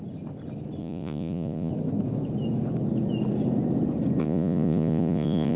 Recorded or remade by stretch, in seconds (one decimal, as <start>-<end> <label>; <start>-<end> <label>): 0.0-0.8 recorded; 0.8-1.7 remade; 1.7-4.2 recorded; 4.2-5.6 remade